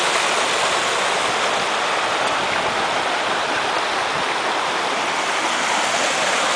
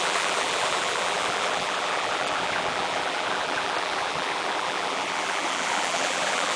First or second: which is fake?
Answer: second